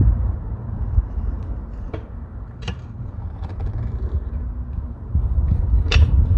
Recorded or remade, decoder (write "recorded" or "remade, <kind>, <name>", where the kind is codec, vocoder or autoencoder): remade, vocoder, BigVGAN v2